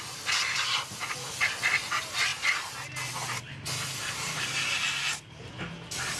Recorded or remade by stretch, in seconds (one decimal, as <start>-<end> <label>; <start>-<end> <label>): 0.0-6.2 recorded